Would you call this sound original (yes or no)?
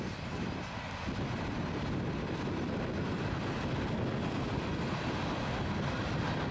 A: yes